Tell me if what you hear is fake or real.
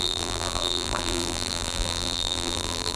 fake